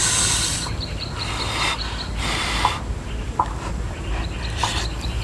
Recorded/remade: remade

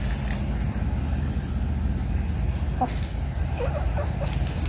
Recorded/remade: recorded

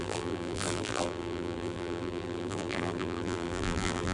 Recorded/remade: remade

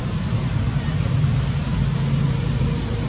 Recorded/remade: remade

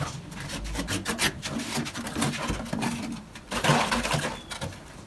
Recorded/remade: recorded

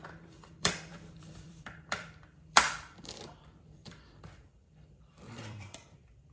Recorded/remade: remade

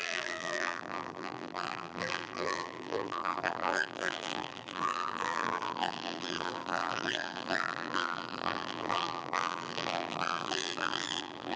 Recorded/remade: remade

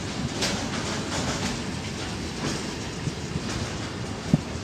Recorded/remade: recorded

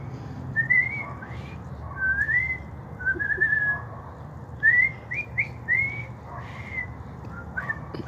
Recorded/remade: recorded